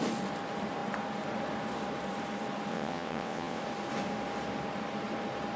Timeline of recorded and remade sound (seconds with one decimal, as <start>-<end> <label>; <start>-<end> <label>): 0.0-2.7 recorded; 2.7-3.6 remade; 3.6-5.6 recorded

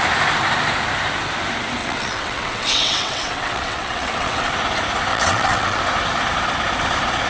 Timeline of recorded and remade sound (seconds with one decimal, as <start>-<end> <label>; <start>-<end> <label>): 0.0-1.8 recorded; 1.8-4.5 remade; 4.5-5.1 recorded; 5.1-5.8 remade; 5.8-7.3 recorded

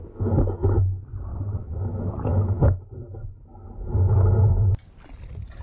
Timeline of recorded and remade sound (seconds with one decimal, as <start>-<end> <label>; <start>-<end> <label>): 0.0-1.3 recorded; 1.3-1.8 remade; 1.8-5.6 recorded

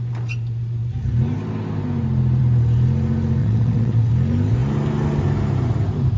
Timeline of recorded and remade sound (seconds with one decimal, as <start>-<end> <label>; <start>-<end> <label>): 0.0-3.4 recorded; 3.4-4.1 remade; 4.1-6.2 recorded

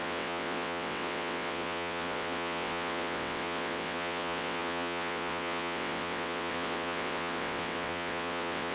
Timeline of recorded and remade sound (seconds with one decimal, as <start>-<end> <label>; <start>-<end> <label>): 0.0-8.7 remade

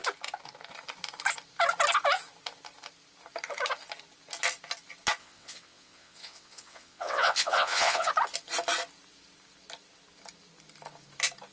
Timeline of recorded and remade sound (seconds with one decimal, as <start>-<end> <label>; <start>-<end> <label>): 0.0-5.2 recorded; 5.2-8.1 remade; 8.1-11.5 recorded

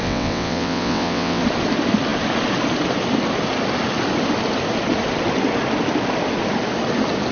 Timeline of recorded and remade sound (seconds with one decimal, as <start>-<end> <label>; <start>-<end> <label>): 0.0-1.4 remade; 1.4-7.3 recorded